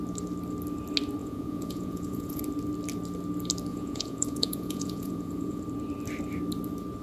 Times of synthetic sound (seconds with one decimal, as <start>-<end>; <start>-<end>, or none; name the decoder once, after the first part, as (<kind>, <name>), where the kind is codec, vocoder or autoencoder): 1.2-2.4 (vocoder, Vocos); 3.7-5.6

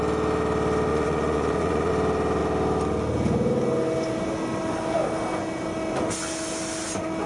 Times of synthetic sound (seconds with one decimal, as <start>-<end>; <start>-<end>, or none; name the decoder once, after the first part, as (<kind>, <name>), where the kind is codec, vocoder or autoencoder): 0.9-1.9 (vocoder, Vocos)

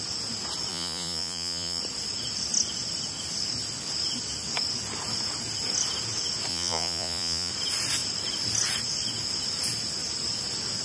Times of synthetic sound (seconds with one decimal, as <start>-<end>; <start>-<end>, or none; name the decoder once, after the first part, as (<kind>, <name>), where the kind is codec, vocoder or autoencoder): 0.7-1.8 (vocoder, Vocos); 6.5-7.5